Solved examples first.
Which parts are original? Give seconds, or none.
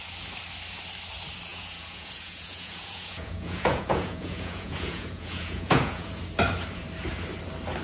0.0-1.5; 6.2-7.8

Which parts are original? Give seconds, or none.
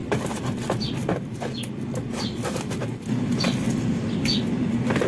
0.0-5.1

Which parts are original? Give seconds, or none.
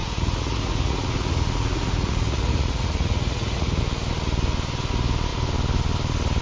3.8-6.4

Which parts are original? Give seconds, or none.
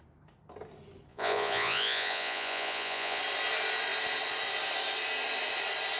0.0-1.1; 3.2-6.0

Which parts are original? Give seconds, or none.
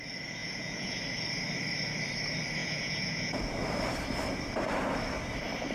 0.0-0.4; 1.0-2.6; 3.4-5.7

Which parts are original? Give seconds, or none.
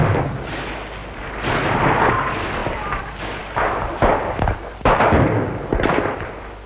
0.0-6.7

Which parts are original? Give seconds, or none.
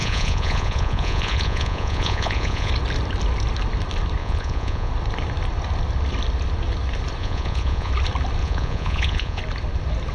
2.7-4.2; 4.9-7.2; 7.9-8.4; 9.4-10.1